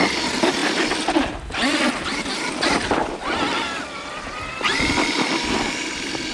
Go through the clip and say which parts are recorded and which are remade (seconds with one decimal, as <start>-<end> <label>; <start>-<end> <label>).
0.0-6.3 recorded